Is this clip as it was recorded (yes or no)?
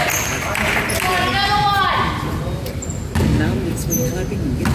yes